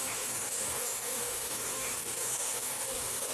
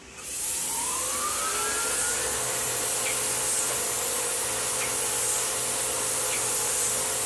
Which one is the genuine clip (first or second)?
second